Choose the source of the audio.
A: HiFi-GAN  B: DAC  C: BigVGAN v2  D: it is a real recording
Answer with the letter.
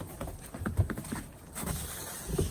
C